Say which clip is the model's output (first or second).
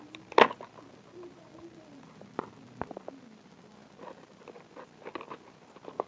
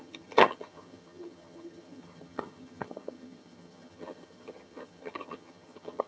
second